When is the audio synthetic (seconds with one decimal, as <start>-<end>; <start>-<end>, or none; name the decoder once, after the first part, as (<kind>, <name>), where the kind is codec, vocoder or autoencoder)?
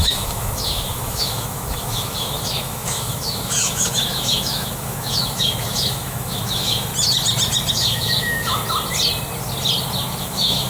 0.0-6.9 (autoencoder, DAC-VAE); 7.7-8.6; 10.2-10.7